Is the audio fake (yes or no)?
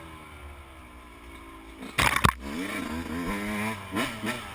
no